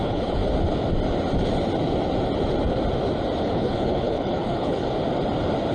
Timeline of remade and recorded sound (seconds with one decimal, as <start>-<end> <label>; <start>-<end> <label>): 0.0-0.4 remade; 0.4-3.4 recorded; 3.4-4.8 remade; 4.8-5.7 recorded